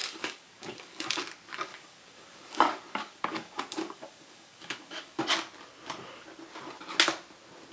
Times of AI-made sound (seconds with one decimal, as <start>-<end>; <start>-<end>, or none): 0.0-1.2; 1.7-5.2